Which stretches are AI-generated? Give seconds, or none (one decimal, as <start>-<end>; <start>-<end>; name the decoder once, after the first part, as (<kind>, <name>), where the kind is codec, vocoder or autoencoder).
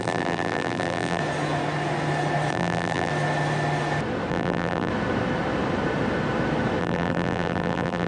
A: 0.0-1.2 (vocoder, BigVGAN v2); 2.5-3.1; 4.3-4.9; 6.8-8.1